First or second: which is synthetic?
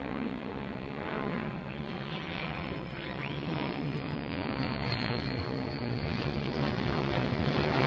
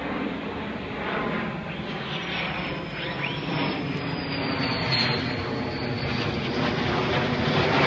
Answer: first